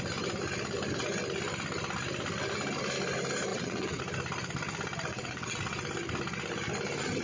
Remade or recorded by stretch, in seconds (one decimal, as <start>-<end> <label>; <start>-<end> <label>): 0.0-3.5 recorded; 3.5-4.0 remade; 4.0-5.1 recorded; 5.1-5.6 remade; 5.6-7.2 recorded

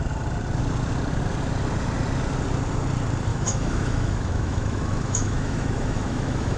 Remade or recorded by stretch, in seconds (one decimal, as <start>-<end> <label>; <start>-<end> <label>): 0.0-3.3 recorded; 3.3-6.6 remade

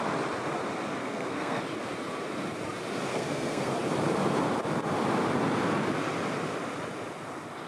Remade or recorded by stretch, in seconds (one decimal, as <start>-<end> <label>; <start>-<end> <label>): 0.0-1.0 recorded; 1.0-1.6 remade; 1.6-3.1 recorded; 3.1-3.7 remade; 3.7-7.7 recorded